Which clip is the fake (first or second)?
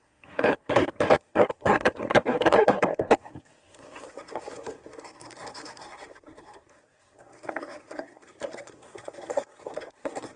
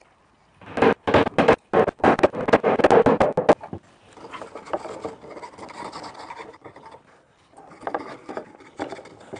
first